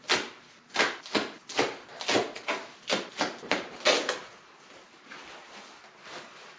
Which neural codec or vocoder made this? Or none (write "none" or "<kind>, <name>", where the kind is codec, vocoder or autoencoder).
none